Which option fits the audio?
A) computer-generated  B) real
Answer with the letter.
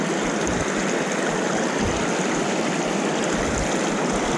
B